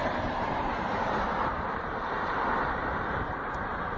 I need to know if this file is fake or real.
fake